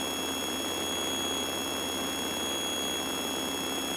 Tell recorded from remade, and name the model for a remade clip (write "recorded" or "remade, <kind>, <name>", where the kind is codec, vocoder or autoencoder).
recorded